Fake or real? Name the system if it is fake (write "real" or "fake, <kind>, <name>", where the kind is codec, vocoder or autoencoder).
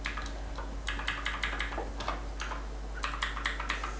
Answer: real